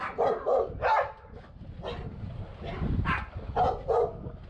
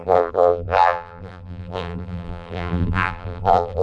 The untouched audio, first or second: first